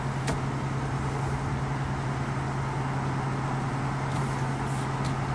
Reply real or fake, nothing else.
real